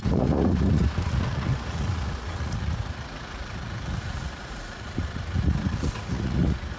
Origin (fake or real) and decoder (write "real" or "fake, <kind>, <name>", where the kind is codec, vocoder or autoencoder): fake, vocoder, Vocos